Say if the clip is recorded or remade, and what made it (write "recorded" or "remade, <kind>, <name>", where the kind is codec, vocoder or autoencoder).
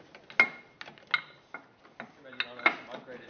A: recorded